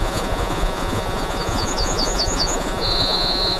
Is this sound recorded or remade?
remade